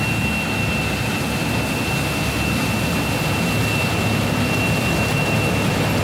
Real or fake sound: real